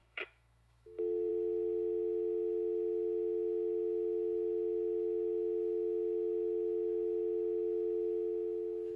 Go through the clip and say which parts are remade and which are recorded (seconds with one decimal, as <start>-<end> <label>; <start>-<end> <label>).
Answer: 0.0-1.3 remade; 1.3-9.0 recorded